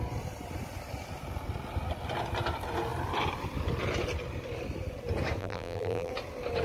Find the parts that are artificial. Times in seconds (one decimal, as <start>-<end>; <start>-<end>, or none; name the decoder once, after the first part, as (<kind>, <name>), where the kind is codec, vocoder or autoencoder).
5.4-6.1 (vocoder, BigVGAN v2)